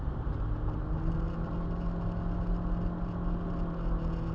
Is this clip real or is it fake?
real